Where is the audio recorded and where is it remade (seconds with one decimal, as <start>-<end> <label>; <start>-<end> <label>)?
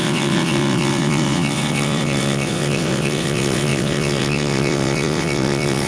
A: 0.0-5.9 remade